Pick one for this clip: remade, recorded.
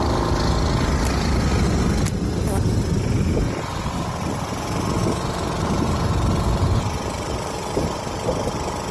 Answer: recorded